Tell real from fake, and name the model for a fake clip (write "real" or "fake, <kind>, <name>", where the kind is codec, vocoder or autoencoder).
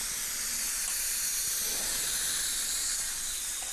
real